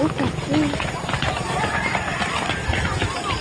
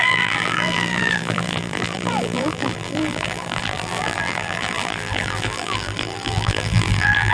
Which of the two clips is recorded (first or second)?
first